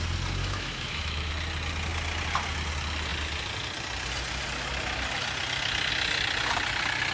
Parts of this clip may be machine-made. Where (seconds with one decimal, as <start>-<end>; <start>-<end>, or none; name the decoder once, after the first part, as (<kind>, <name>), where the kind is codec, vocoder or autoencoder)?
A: 0.4-1.3 (autoencoder, DAC-VAE)